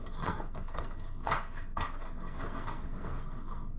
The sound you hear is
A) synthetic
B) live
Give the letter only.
A